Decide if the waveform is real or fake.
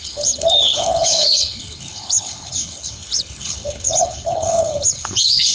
fake